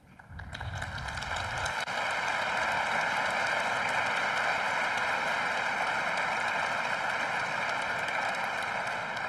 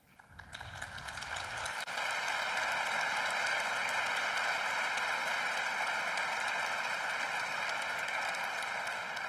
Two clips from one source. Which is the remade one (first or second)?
first